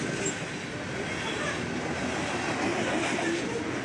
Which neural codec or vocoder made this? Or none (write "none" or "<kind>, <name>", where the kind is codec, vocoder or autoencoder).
none